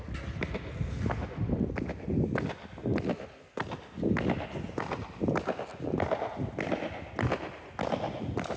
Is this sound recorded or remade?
recorded